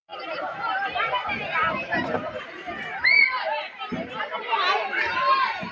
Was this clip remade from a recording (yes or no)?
yes